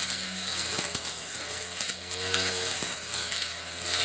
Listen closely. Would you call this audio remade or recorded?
remade